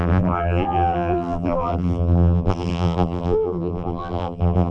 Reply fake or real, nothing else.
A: fake